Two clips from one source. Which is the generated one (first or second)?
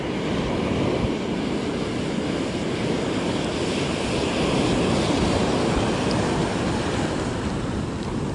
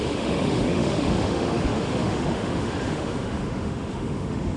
second